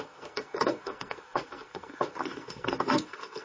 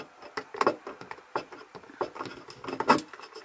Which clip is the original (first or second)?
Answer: second